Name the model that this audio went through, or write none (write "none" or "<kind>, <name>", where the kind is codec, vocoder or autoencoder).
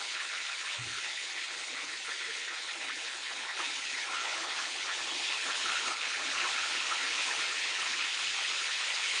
codec, HILCodec